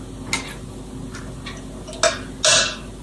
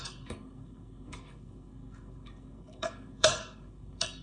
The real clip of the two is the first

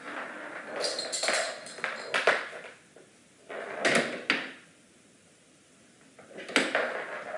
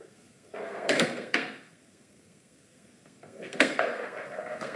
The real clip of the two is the first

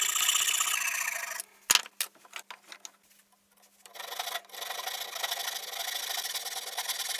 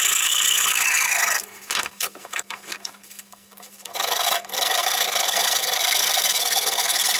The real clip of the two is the first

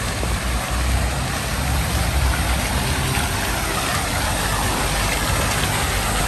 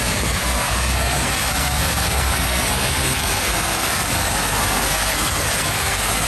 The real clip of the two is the first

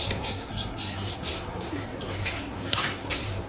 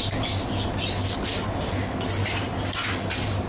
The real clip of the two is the second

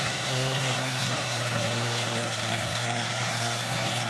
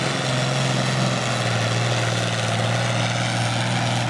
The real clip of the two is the second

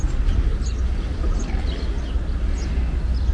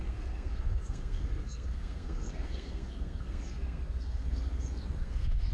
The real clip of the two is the first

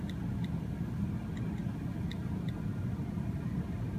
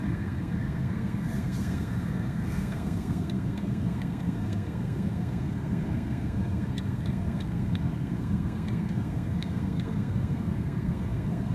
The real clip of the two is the first